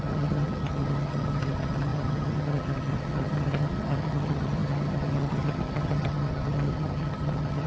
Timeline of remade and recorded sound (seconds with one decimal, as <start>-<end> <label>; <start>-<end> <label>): 0.0-7.7 remade